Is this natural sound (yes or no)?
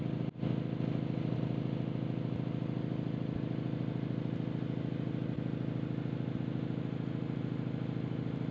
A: yes